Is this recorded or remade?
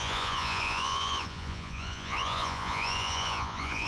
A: remade